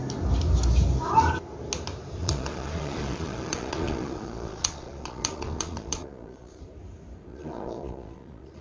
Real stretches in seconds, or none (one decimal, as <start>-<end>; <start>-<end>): 0.0-2.2; 6.6-7.3

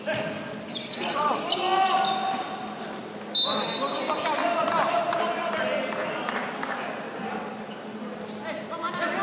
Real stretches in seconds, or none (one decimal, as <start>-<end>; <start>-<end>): 0.0-0.7; 1.4-9.2

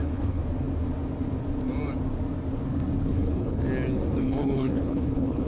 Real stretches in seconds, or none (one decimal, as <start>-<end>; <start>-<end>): 0.4-3.0; 3.6-4.2